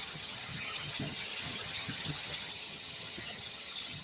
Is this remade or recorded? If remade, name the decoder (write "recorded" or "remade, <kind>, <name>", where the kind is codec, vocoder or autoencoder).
remade, vocoder, HiFi-GAN